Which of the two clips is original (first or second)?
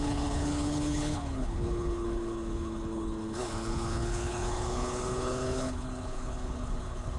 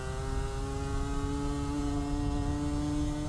second